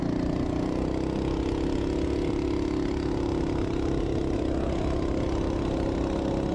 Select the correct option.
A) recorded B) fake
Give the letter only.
A